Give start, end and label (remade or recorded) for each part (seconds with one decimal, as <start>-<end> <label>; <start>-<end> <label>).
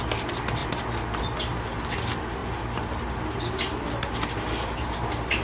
0.0-2.4 recorded; 2.4-4.3 remade; 4.3-5.4 recorded